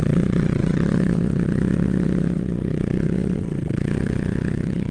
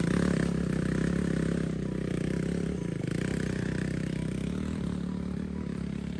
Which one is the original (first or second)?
second